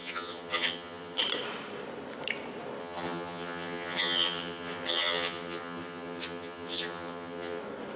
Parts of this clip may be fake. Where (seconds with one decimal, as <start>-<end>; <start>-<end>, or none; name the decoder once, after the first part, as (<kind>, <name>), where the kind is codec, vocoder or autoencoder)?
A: 0.0-1.2 (vocoder, HiFi-GAN); 2.8-7.6